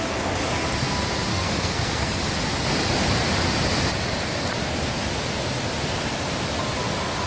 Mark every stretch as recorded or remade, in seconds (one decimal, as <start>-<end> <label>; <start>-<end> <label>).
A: 0.0-1.3 recorded; 1.3-2.2 remade; 2.2-7.3 recorded